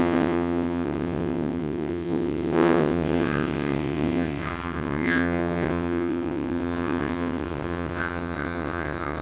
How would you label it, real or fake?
fake